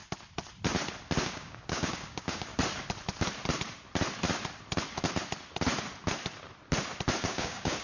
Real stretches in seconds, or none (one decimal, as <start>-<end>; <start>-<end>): 0.0-1.2; 2.5-7.2